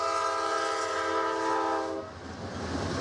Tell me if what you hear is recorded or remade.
recorded